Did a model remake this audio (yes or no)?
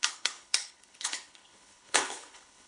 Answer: yes